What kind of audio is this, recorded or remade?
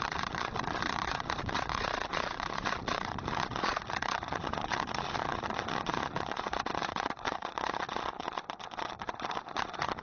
remade